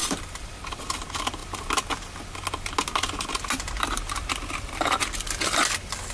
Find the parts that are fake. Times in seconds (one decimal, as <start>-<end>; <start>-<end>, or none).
0.0-0.7